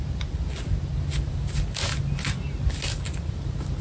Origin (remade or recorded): recorded